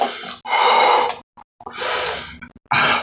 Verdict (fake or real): real